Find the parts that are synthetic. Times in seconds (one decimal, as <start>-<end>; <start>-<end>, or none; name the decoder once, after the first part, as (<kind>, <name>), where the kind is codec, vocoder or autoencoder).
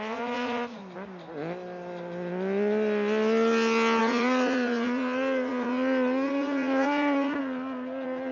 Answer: 0.0-0.8 (vocoder, Vocos); 4.0-8.3